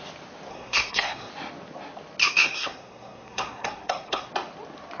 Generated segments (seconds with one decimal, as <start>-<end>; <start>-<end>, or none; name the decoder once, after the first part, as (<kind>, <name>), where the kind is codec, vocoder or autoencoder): 0.5-1.3 (codec, SNAC); 2.2-4.3